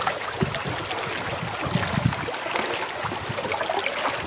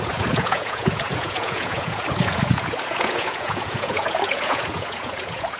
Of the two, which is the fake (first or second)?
second